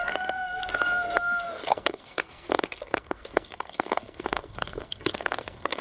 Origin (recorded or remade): remade